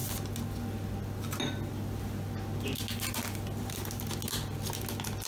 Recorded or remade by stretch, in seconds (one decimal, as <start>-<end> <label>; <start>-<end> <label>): 0.0-5.3 recorded